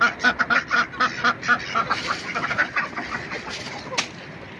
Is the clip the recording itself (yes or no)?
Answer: yes